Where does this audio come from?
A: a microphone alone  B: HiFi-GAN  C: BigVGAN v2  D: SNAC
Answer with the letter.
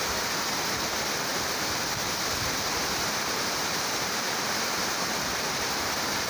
C